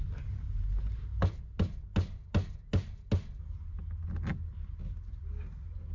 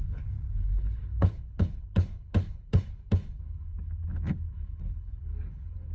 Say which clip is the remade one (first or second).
second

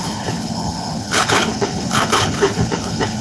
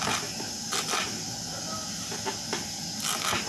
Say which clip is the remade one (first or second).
first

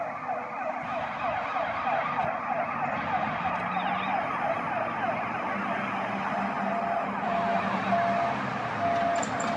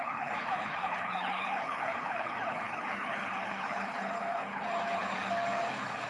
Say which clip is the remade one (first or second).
second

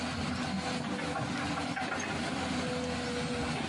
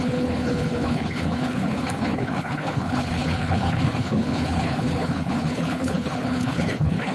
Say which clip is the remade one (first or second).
second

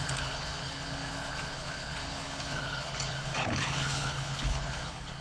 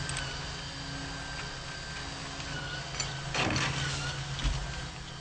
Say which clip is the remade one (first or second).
first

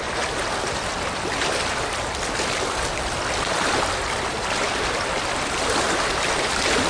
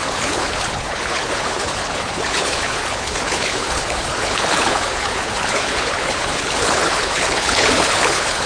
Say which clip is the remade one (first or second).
second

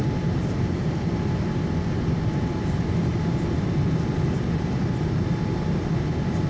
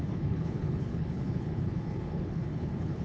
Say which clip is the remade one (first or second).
second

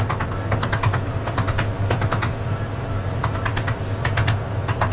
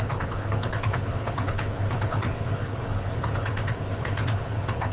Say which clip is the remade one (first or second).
second